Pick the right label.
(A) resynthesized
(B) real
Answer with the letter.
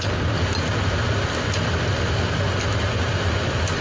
B